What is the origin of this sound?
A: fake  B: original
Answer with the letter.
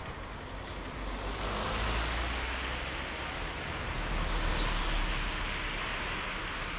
B